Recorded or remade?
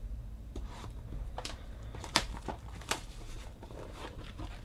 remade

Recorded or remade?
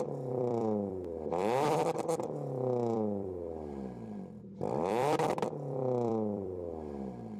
remade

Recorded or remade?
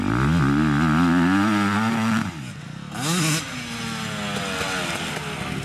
recorded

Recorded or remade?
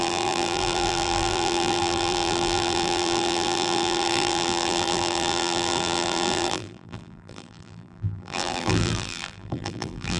remade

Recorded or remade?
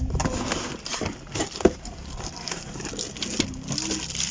recorded